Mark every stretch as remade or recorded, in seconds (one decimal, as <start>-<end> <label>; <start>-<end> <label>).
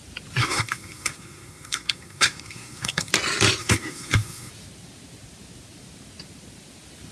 0.0-0.4 recorded; 0.4-3.1 remade; 3.1-3.6 recorded; 3.6-4.5 remade; 4.5-7.1 recorded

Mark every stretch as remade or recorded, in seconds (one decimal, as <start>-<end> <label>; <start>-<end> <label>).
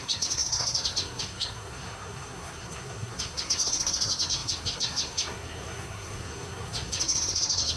0.0-7.8 remade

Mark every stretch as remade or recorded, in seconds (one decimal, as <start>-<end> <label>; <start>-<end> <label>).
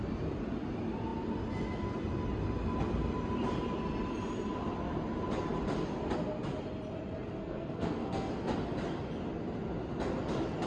0.0-7.4 recorded; 7.4-8.3 remade; 8.3-10.7 recorded